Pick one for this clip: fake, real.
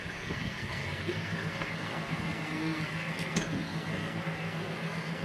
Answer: fake